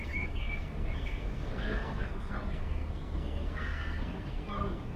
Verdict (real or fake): fake